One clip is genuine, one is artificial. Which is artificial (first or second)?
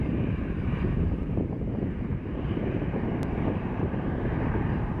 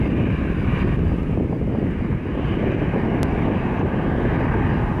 first